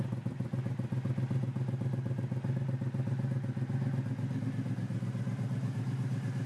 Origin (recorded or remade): recorded